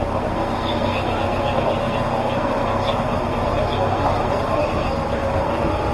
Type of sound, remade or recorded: remade